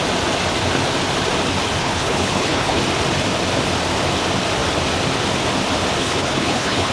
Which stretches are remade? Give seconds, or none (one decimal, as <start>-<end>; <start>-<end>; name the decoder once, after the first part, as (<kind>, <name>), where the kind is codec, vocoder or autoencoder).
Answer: 1.8-2.8 (codec, HILCodec); 6.0-6.9